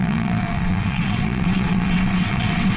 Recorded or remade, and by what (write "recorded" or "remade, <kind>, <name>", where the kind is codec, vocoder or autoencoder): remade, vocoder, WaveNeXt